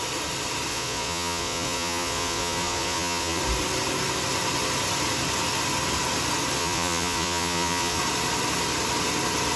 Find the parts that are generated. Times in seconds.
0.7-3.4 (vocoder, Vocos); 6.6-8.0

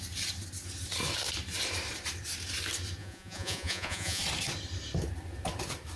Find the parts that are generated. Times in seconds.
3.0-4.2 (vocoder, Vocos)

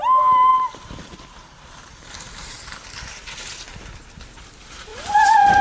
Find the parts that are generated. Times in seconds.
4.9-5.6 (vocoder, Vocos)

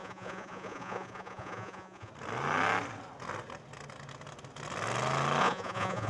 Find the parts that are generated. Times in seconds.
0.0-2.1 (vocoder, Vocos); 5.4-6.1